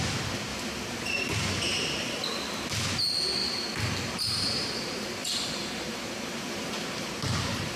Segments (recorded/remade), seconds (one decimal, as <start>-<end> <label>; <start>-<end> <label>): 0.0-7.8 recorded